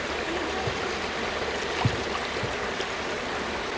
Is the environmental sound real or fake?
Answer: real